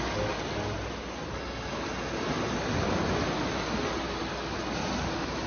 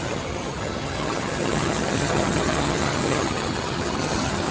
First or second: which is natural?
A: first